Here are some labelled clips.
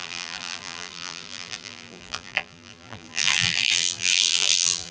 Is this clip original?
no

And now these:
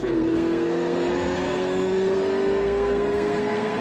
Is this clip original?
no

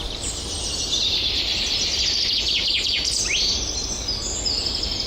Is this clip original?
yes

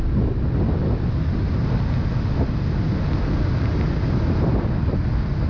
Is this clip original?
yes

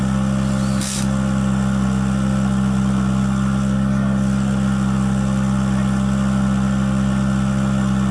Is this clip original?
yes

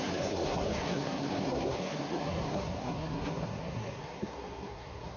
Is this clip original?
no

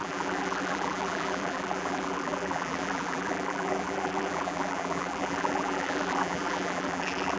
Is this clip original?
no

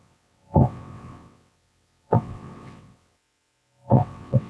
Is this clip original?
no